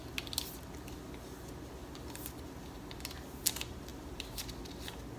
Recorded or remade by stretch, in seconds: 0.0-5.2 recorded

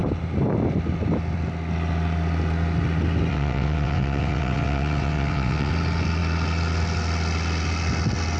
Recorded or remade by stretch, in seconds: 0.0-3.3 recorded; 3.3-5.7 remade; 5.7-8.4 recorded

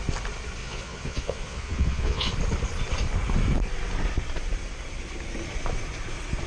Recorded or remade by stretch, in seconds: 0.0-0.6 recorded; 0.6-2.3 remade; 2.3-6.5 recorded

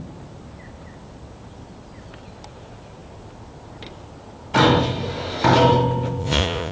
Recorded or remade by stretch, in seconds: 0.0-6.2 recorded; 6.2-6.7 remade

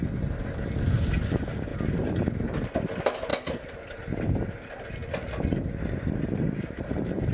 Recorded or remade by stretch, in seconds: 0.0-7.3 recorded